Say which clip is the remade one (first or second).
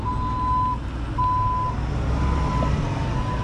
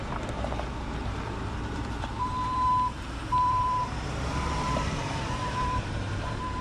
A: second